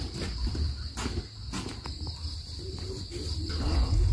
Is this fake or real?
real